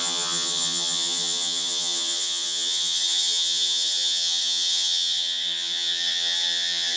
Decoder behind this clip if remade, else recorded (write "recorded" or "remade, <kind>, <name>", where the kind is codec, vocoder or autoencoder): remade, vocoder, HiFi-GAN